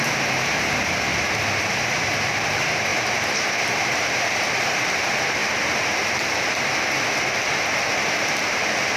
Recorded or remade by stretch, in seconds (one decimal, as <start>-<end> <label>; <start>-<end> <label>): 0.0-1.1 remade; 1.1-1.8 recorded; 1.8-5.4 remade; 5.4-7.8 recorded; 7.8-9.0 remade